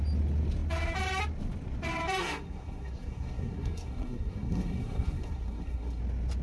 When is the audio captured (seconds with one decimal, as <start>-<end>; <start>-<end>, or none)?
0.0-2.2; 6.0-6.4